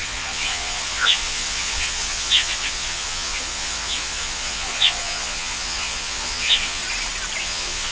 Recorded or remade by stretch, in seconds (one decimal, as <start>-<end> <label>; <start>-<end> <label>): 0.0-6.8 remade; 6.8-7.4 recorded; 7.4-7.9 remade